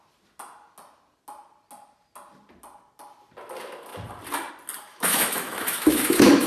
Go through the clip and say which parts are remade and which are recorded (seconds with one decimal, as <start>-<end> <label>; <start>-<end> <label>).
0.0-4.9 recorded; 4.9-6.5 remade